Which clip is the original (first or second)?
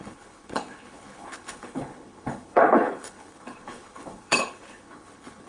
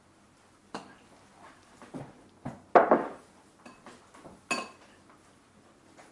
second